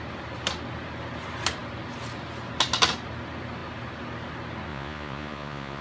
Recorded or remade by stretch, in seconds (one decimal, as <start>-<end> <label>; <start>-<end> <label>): 0.0-4.7 recorded; 4.7-5.8 remade